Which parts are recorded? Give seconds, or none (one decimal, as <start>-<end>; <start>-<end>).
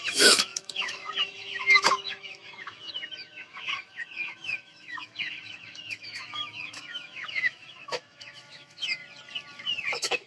9.0-9.9